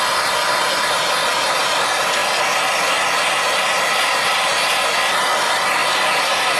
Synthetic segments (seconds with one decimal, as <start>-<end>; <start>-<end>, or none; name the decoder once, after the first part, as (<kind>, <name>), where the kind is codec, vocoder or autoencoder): none